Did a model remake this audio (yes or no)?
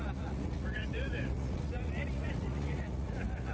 yes